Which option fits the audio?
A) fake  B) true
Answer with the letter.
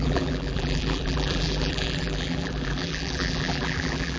A